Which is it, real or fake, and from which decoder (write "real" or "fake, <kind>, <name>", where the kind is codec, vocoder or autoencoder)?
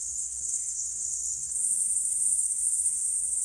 fake, codec, SNAC